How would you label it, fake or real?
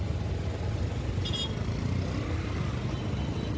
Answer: real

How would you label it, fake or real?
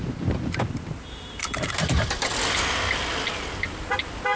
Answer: fake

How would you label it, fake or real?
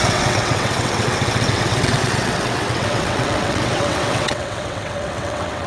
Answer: fake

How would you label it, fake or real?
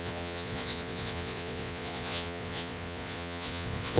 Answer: fake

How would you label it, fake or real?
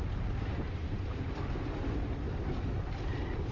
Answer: real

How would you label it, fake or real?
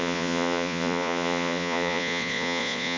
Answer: fake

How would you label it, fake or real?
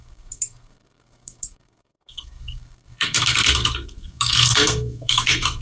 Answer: fake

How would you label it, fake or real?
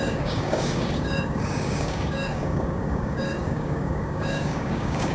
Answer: fake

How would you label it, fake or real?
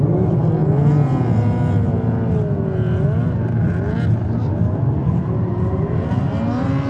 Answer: real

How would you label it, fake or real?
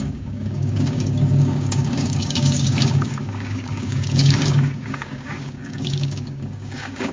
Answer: fake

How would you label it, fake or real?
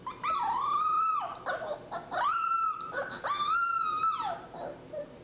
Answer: fake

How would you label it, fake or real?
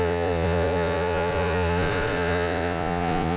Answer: fake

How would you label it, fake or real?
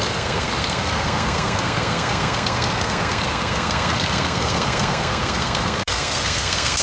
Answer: fake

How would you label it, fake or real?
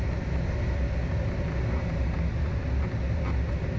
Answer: real